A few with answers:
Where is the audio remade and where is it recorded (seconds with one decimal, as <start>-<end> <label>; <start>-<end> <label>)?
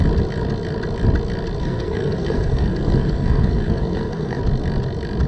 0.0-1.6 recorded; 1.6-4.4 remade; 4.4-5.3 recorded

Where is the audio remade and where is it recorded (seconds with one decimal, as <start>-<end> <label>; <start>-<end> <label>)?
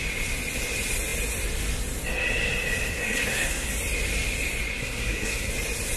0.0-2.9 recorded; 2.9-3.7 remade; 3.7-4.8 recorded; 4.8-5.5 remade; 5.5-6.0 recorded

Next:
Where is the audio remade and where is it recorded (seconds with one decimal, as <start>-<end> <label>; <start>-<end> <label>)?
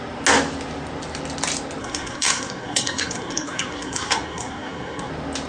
0.0-1.8 recorded; 1.8-5.1 remade; 5.1-5.5 recorded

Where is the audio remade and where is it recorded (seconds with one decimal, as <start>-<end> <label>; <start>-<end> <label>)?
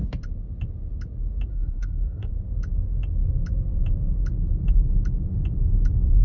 0.0-1.5 recorded; 1.5-2.3 remade; 2.3-6.2 recorded